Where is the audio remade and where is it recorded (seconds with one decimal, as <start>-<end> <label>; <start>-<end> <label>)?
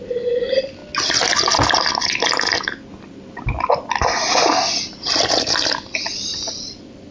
0.0-0.8 remade; 0.8-4.4 recorded; 4.4-7.1 remade